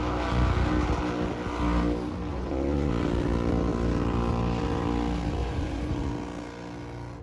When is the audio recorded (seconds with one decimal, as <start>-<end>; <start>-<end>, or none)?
0.0-2.3; 2.9-5.4; 6.1-7.2